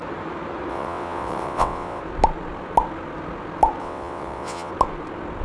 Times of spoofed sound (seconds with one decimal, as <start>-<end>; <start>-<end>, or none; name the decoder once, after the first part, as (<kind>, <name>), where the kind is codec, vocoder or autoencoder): 0.7-2.0 (vocoder, WaveNeXt); 3.8-4.7